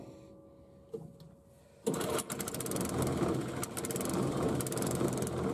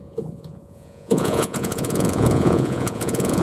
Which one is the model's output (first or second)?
second